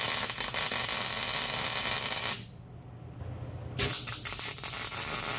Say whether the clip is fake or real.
real